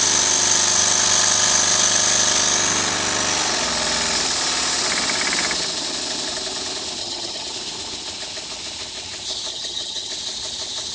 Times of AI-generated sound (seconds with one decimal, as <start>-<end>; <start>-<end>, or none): 7.0-7.5; 9.5-10.1